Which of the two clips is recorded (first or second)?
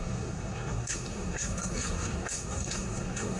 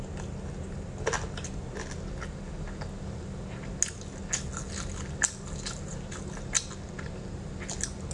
second